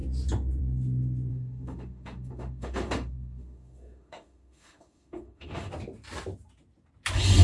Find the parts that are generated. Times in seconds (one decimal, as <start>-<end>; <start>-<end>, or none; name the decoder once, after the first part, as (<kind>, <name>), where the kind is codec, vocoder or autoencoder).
1.3-5.7 (autoencoder, DAC-VAE)